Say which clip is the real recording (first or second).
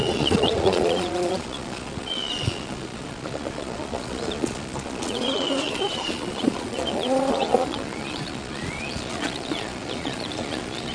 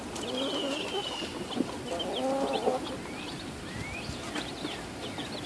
second